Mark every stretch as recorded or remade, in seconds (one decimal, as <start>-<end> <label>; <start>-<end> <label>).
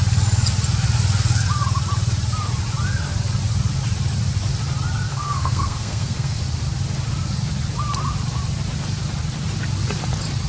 0.0-5.1 recorded; 5.1-6.4 remade; 6.4-10.5 recorded